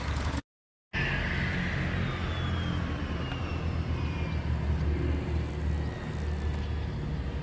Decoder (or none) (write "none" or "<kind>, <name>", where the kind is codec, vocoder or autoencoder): none